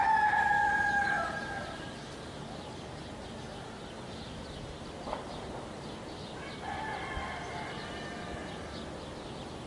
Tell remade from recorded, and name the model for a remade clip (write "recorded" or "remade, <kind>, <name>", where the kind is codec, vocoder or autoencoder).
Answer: recorded